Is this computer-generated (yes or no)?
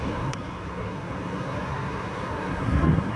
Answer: yes